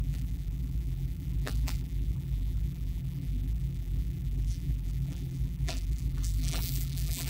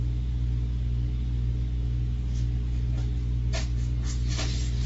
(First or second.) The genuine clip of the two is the second